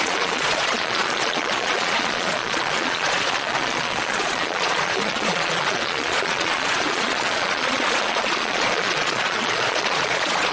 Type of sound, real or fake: fake